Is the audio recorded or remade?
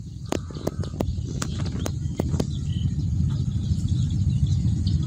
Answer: recorded